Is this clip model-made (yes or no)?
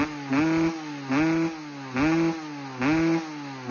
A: no